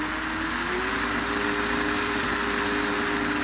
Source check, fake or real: real